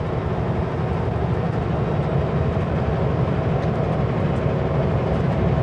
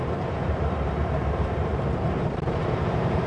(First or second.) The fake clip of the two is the second